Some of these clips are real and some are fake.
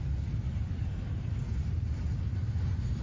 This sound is real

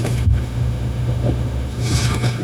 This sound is fake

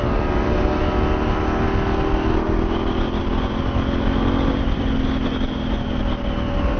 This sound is real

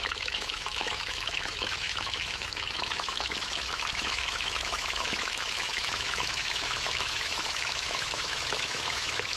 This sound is fake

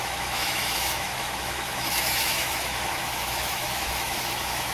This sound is fake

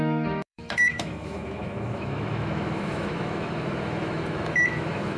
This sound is fake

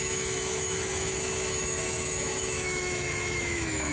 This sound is fake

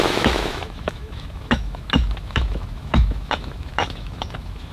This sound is fake